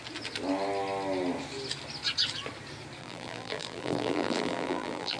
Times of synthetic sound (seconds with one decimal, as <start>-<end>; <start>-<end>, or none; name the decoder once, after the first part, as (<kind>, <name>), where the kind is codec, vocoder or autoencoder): 3.0-5.2 (vocoder, BigVGAN v2)